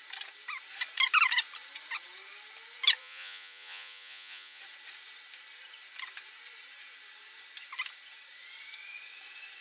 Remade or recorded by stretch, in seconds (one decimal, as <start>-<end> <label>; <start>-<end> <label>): 0.0-3.0 recorded; 3.0-4.6 remade; 4.6-9.6 recorded